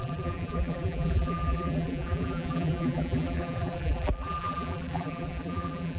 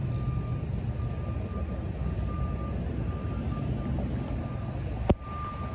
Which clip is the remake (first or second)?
first